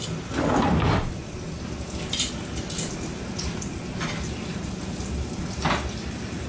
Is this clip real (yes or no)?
yes